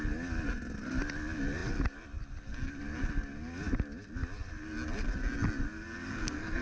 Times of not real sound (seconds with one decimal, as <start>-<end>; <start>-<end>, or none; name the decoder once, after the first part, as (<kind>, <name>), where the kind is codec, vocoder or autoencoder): 6.1-6.6 (codec, SNAC)